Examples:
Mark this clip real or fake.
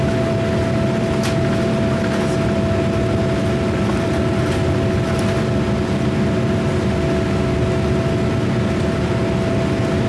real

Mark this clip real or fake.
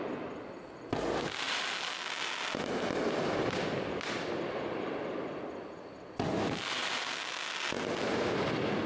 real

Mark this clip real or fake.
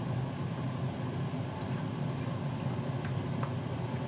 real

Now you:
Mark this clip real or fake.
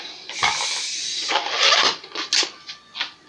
real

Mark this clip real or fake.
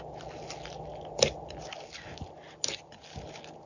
real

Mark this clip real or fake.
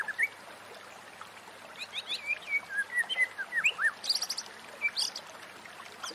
real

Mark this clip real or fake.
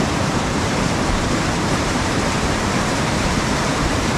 fake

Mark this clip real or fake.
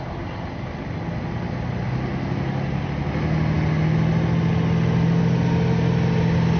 real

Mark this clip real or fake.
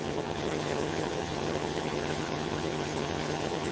fake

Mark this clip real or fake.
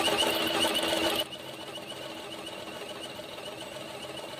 real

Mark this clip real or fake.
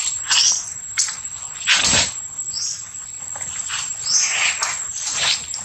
real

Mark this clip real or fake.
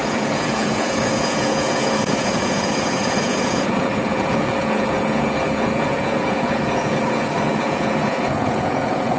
fake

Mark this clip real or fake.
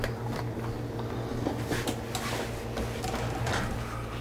real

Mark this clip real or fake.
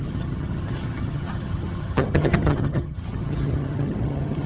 fake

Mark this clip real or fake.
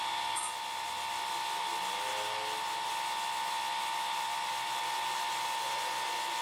real